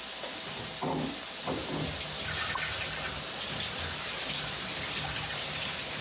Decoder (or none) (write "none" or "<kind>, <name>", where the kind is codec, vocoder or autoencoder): none